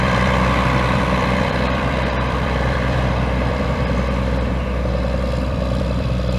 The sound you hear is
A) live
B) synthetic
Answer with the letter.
B